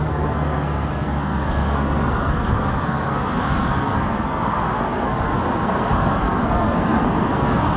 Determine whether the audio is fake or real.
fake